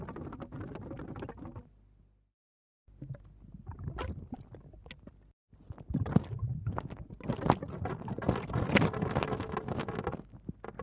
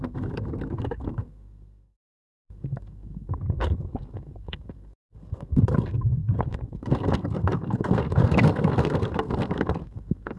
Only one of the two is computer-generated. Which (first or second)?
second